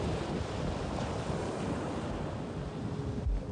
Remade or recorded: recorded